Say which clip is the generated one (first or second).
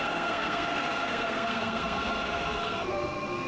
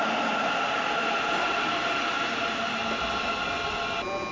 first